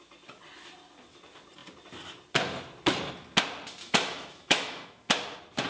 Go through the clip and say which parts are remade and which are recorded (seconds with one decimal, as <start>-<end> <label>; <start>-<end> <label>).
0.0-3.8 recorded; 3.8-5.1 remade; 5.1-5.7 recorded